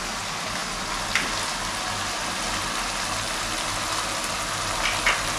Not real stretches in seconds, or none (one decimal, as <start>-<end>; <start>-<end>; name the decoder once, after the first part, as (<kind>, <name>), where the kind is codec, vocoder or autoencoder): none